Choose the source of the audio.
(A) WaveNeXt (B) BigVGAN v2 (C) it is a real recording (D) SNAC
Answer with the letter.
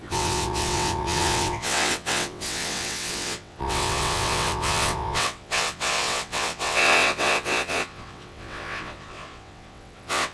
A